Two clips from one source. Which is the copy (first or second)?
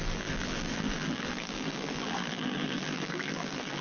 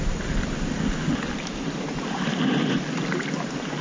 first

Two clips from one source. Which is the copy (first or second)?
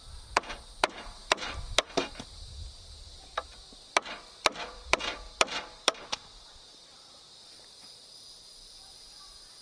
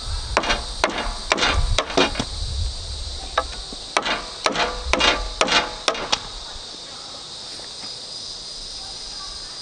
first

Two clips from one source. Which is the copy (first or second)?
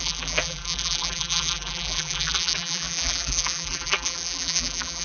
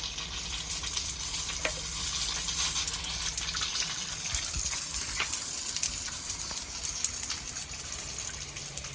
first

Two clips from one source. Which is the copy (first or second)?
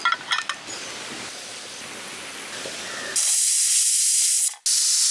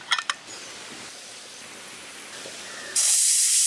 second